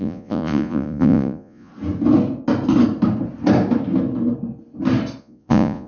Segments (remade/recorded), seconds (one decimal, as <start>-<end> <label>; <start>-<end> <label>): 0.0-1.7 remade; 1.7-5.2 recorded; 5.2-5.9 remade